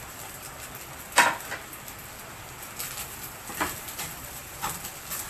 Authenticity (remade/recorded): remade